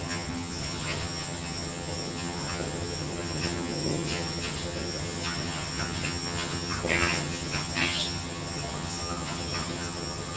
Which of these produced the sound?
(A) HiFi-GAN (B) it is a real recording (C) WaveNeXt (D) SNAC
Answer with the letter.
A